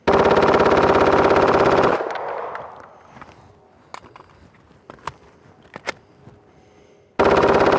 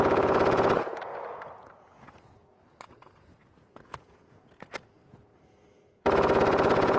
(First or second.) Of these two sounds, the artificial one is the second